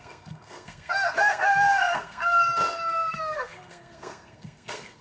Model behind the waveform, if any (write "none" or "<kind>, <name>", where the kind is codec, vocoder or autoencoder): codec, SNAC